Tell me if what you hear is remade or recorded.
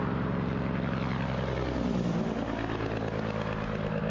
recorded